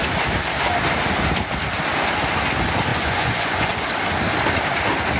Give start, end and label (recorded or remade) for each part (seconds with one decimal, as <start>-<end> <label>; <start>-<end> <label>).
0.0-2.9 recorded; 2.9-3.7 remade; 3.7-5.2 recorded